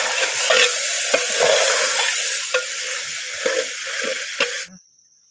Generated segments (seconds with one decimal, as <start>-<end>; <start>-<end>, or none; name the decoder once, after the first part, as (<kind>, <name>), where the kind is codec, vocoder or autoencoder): none